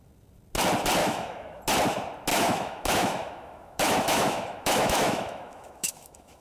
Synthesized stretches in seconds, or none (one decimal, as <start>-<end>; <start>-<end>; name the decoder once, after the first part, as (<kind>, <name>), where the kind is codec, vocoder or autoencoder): 1.0-1.6 (autoencoder, DAC-VAE); 2.3-6.4